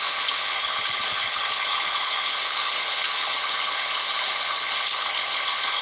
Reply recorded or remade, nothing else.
remade